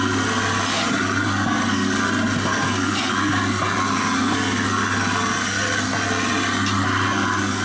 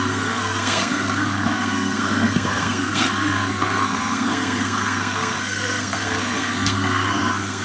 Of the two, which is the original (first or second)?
first